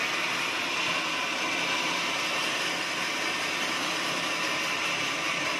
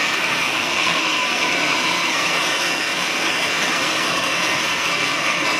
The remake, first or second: second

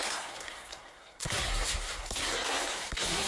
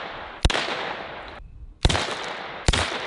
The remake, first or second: first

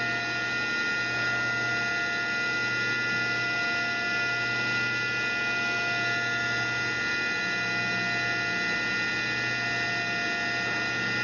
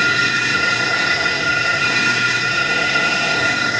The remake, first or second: second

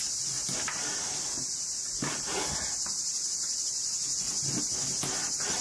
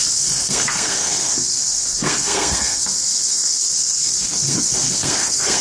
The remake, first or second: second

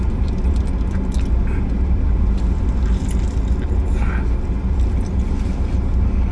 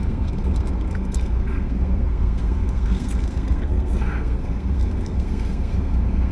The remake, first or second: second